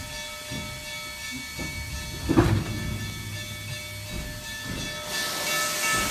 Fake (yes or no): no